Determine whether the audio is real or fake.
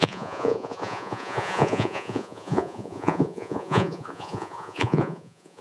fake